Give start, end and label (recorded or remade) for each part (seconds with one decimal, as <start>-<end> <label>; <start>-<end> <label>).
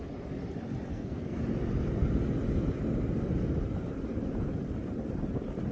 0.0-0.9 recorded; 0.9-1.4 remade; 1.4-5.7 recorded